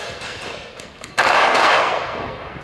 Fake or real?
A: fake